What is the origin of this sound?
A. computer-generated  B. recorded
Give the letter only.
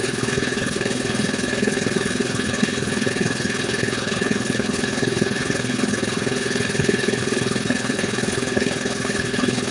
A